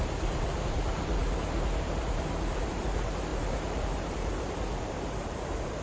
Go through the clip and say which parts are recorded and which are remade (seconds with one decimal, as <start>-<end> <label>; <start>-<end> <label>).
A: 0.0-1.2 remade; 1.2-1.9 recorded; 1.9-5.8 remade